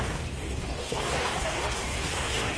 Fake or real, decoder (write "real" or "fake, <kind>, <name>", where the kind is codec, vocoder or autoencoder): fake, codec, DAC